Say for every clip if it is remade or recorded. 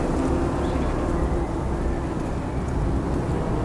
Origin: recorded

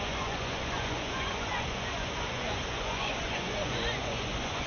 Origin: remade